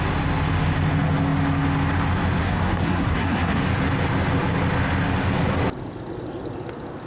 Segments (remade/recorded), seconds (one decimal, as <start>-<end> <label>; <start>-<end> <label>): 0.0-2.4 recorded; 2.4-3.6 remade; 3.6-7.1 recorded